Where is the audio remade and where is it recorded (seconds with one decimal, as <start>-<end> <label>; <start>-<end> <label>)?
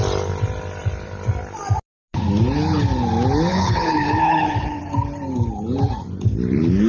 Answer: 0.0-3.5 recorded; 3.5-4.8 remade; 4.8-6.9 recorded